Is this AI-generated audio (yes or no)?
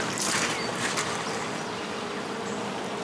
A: no